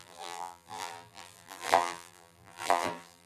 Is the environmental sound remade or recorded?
remade